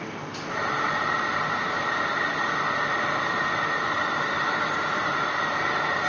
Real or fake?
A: fake